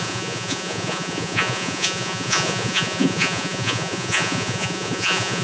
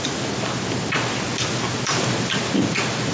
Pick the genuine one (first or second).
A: second